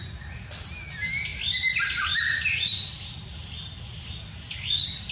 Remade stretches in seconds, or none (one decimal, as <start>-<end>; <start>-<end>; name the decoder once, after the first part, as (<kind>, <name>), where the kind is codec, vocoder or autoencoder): none